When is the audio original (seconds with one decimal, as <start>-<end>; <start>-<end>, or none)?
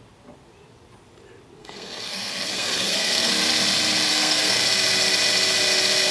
0.0-1.6; 3.3-4.1; 4.6-6.1